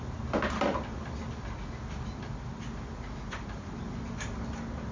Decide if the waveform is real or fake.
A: real